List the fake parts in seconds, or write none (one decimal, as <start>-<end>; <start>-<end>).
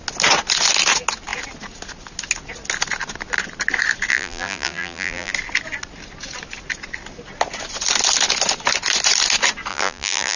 4.1-5.3; 9.7-10.4